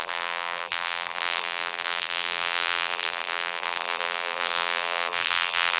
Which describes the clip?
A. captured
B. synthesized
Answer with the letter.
B